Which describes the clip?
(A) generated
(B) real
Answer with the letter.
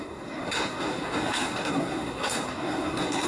A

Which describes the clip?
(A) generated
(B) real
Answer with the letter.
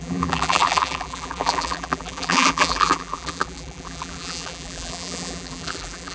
A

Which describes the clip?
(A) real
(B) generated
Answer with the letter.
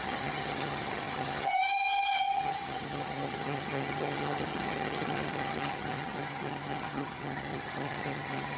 B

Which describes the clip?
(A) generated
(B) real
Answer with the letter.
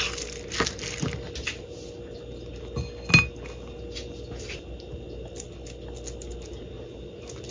B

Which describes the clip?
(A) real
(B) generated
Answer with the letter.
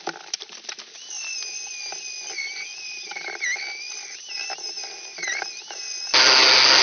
A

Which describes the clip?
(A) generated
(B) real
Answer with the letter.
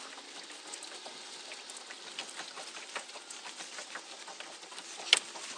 B